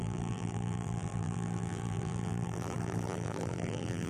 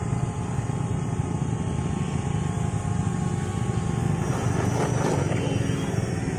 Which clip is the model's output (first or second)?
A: first